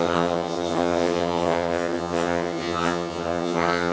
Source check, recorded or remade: remade